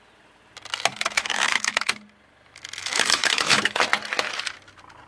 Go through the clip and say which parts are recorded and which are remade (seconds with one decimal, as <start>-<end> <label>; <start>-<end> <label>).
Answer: 0.0-0.9 recorded; 0.9-1.9 remade; 1.9-2.8 recorded; 2.8-3.8 remade; 3.8-5.1 recorded

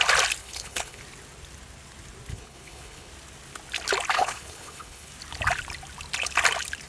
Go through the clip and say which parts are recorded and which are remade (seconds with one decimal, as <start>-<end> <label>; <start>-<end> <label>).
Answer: 0.0-0.4 recorded; 0.4-1.0 remade; 1.0-2.3 recorded; 2.3-3.1 remade; 3.1-4.1 recorded; 4.1-5.1 remade; 5.1-6.9 recorded